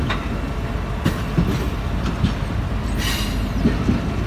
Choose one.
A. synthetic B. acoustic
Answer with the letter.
B